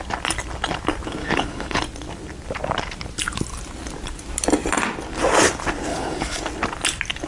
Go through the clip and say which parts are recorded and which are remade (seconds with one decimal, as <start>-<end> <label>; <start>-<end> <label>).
0.0-1.2 recorded; 1.2-1.8 remade; 1.8-5.9 recorded; 5.9-6.4 remade; 6.4-7.3 recorded